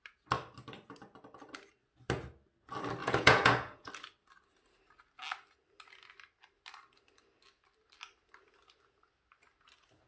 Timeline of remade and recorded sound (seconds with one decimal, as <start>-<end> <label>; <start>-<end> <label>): 0.0-3.0 recorded; 3.0-3.9 remade; 3.9-10.1 recorded